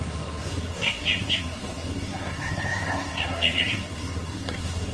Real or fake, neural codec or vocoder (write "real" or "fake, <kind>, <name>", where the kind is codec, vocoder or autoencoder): fake, codec, SNAC